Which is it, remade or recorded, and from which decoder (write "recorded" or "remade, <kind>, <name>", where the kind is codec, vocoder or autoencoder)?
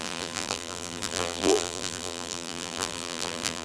remade, vocoder, BigVGAN v2